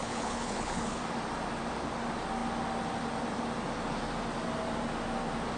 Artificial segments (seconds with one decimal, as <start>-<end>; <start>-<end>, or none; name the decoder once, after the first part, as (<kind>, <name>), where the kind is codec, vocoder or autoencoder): 0.0-1.0 (codec, HILCodec)